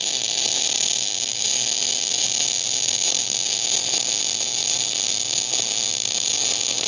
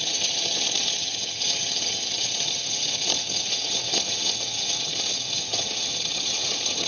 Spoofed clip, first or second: second